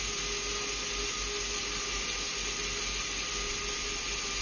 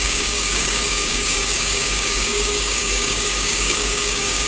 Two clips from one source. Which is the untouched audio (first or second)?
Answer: first